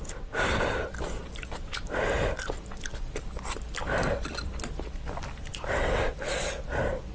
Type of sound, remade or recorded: recorded